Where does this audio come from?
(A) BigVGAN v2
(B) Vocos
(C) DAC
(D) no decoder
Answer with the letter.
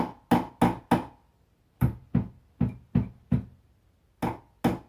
D